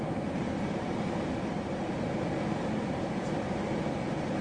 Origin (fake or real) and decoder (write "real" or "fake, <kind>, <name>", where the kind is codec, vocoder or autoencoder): real